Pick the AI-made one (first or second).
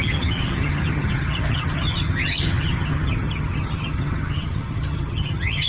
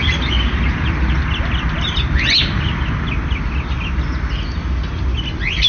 first